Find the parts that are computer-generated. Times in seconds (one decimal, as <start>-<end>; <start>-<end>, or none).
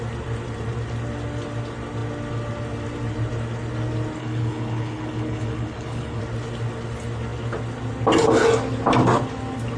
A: 4.2-6.2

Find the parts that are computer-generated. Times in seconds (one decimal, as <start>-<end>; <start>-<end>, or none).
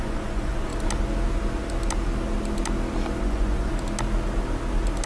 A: 0.0-0.7; 3.2-3.7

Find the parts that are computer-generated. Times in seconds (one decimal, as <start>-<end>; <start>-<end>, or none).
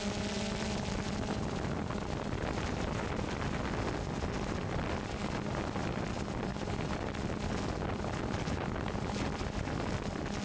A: none